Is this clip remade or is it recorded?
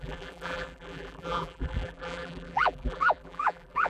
remade